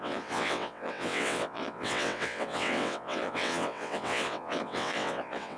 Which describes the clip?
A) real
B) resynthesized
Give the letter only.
B